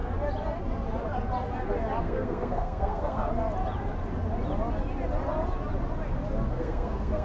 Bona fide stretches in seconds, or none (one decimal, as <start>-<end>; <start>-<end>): 0.0-2.0; 3.3-6.5